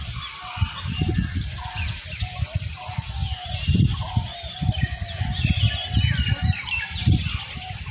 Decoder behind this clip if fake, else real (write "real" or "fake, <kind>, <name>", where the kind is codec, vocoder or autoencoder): real